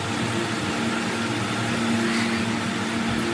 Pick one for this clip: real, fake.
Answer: real